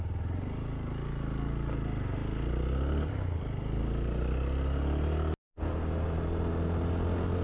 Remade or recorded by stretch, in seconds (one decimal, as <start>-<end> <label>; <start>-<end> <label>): 0.0-7.4 recorded